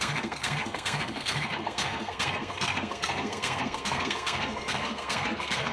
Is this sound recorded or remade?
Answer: remade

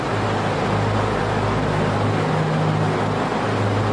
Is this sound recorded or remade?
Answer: recorded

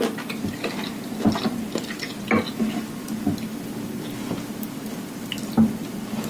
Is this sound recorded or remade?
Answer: recorded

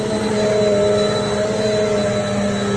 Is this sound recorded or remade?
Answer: recorded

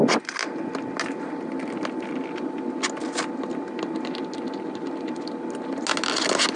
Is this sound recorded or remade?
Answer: recorded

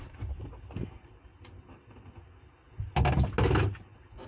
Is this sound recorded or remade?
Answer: recorded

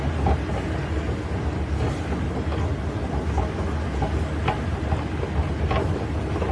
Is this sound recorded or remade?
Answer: recorded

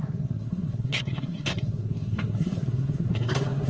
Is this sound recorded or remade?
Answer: remade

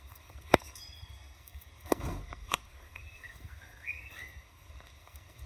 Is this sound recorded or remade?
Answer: remade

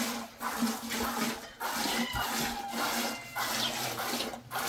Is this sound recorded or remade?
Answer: recorded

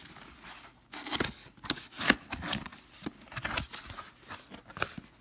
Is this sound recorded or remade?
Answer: recorded